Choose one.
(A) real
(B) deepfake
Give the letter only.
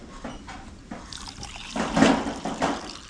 A